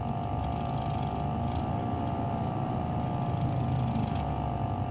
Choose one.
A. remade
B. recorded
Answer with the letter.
B